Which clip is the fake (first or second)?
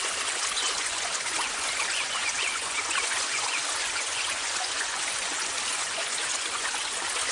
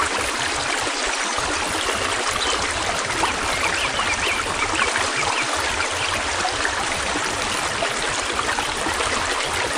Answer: first